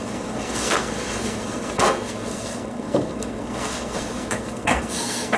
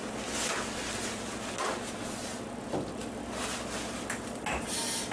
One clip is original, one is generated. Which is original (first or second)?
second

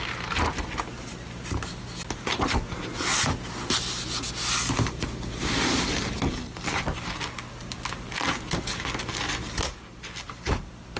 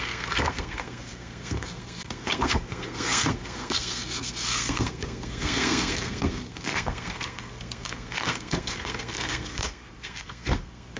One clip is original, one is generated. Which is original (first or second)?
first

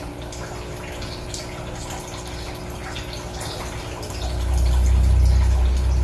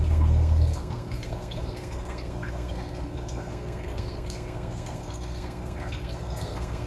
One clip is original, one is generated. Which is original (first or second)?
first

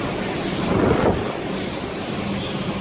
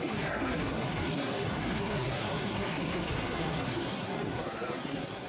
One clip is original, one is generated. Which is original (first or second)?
first